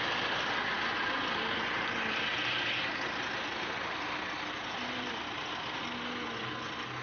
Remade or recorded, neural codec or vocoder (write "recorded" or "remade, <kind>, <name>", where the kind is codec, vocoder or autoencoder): recorded